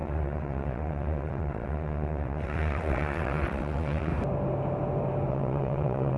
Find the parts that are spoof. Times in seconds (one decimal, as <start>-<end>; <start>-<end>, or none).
0.0-4.1; 5.3-6.2